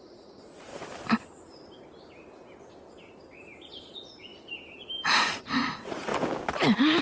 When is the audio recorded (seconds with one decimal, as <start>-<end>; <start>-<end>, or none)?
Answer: 0.7-3.9; 4.3-5.1; 6.1-7.0